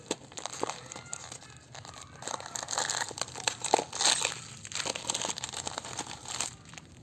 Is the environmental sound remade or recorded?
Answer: recorded